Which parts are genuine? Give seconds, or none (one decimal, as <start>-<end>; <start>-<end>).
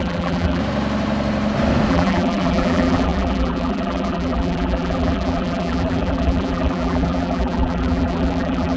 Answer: 0.6-1.9